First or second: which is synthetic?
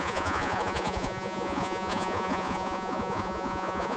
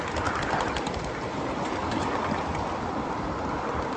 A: first